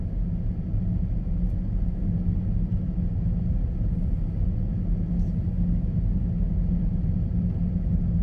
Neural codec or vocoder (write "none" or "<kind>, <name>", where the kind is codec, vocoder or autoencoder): none